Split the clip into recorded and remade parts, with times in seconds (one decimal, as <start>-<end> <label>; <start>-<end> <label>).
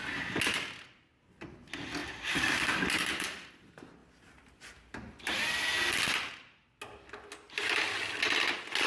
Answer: 0.0-2.0 recorded; 2.0-3.5 remade; 3.5-8.9 recorded